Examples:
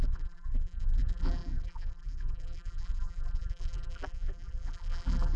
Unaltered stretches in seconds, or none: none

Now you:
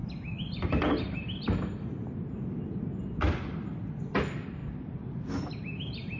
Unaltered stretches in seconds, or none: 0.0-6.2

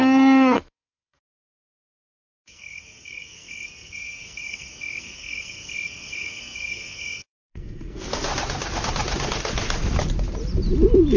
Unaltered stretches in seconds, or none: 8.3-11.2

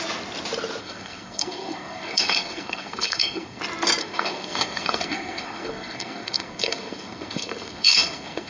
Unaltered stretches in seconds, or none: 0.0-0.8; 3.6-4.0

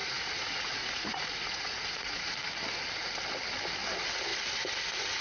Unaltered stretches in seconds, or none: 2.3-5.2

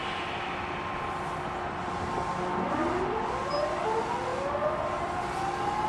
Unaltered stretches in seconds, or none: 0.0-5.9